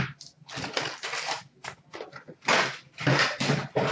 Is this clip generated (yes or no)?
no